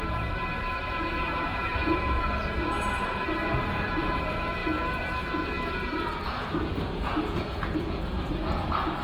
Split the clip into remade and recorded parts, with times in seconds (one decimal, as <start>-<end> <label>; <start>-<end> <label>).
0.0-9.0 remade